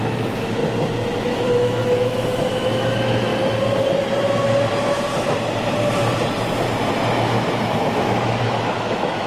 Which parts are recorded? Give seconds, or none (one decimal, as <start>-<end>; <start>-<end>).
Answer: 0.6-1.2; 3.3-8.0